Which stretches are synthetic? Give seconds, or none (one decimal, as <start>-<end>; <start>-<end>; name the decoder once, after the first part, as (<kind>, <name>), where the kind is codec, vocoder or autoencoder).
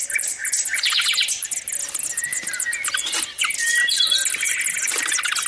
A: none